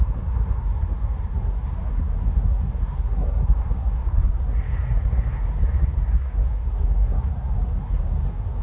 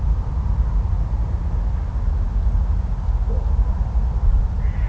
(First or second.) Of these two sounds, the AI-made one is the first